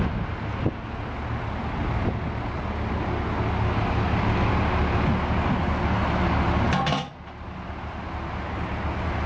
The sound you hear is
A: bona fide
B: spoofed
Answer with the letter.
A